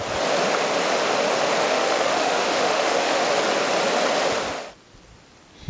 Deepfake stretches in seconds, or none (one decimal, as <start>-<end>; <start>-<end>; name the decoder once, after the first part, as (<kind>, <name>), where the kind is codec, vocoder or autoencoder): 1.6-3.2 (autoencoder, DAC-VAE)